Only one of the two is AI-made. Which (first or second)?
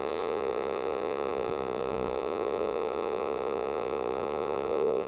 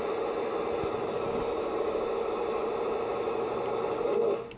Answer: first